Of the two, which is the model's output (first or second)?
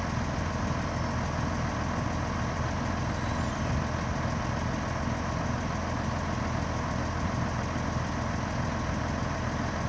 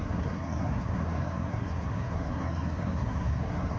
second